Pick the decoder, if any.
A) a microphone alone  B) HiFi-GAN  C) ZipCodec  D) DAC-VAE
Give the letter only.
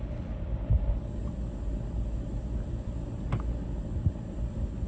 A